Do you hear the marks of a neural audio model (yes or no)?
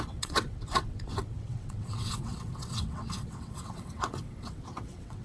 yes